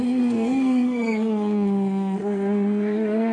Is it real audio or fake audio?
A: fake